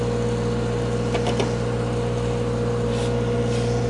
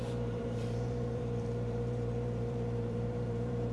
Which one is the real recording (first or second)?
first